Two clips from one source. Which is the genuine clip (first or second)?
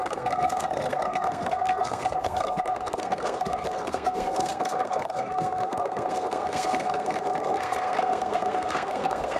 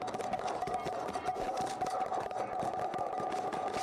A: second